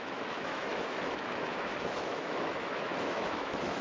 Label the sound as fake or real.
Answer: fake